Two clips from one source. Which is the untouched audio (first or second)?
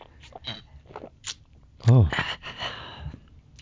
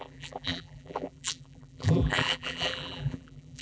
first